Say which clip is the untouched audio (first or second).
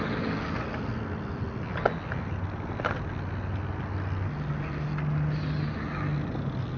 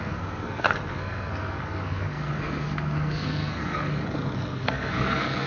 first